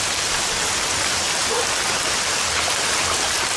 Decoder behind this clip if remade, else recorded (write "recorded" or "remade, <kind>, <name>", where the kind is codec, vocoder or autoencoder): recorded